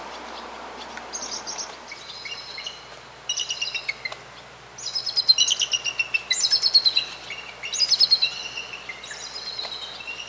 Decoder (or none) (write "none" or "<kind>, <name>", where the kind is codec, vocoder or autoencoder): none